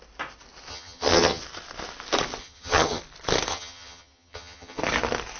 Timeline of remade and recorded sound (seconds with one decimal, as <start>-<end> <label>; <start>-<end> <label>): 0.0-0.7 recorded; 0.7-1.4 remade; 1.4-2.4 recorded; 2.4-3.0 remade; 3.0-3.5 recorded; 3.5-4.8 remade; 4.8-5.4 recorded